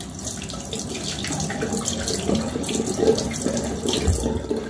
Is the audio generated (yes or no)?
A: no